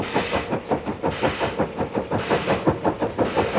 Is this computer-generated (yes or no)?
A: no